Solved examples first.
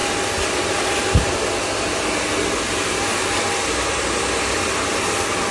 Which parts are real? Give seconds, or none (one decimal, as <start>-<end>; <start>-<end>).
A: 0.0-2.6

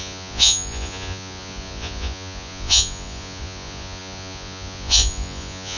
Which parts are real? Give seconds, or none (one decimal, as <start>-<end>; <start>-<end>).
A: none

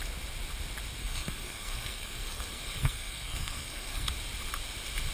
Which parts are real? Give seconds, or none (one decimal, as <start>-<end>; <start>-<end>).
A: 0.0-1.0; 4.1-5.1